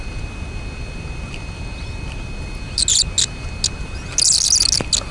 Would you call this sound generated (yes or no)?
no